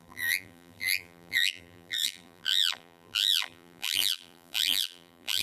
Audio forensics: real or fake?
fake